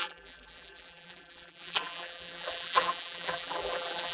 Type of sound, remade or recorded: remade